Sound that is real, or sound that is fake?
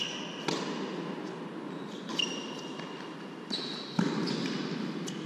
real